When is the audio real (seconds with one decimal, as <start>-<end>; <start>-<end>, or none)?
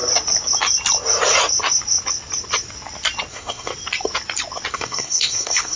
0.0-3.3; 3.7-4.7